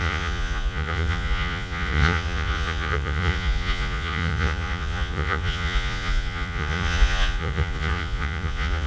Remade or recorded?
remade